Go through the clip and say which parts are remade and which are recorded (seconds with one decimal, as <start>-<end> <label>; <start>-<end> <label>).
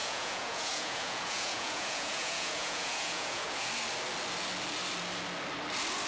0.0-3.7 remade; 3.7-6.1 recorded